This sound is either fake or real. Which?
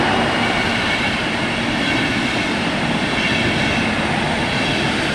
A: real